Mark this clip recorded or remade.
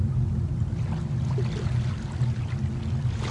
recorded